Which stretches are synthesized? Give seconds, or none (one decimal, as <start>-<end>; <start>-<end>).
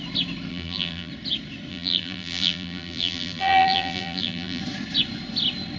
0.5-1.1; 1.7-4.6